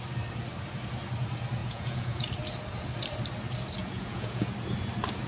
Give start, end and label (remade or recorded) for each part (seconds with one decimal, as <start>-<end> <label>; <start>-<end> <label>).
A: 0.0-1.6 recorded; 1.6-2.3 remade; 2.3-3.8 recorded; 3.8-4.5 remade; 4.5-5.3 recorded